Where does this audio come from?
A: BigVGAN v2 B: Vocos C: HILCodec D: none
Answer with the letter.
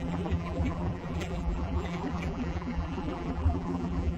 A